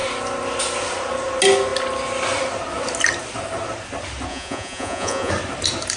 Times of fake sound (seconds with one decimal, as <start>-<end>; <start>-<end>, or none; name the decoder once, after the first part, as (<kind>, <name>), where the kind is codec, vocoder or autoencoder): 4.3-5.3 (vocoder, Vocos)